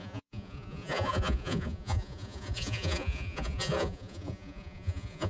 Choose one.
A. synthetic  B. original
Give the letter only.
A